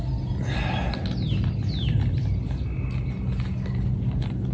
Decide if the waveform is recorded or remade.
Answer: recorded